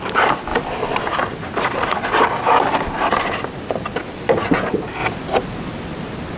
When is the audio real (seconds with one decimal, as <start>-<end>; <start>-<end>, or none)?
0.0-6.4